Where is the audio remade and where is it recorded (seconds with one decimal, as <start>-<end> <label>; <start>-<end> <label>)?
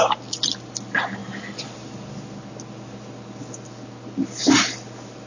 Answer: 0.0-5.3 recorded